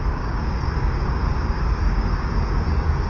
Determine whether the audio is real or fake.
fake